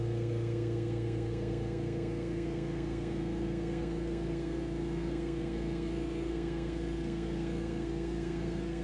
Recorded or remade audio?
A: remade